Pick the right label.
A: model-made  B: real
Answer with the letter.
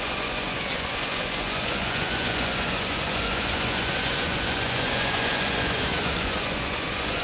A